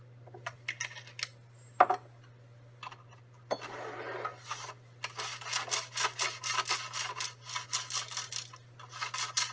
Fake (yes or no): no